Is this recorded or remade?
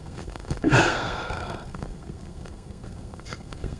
remade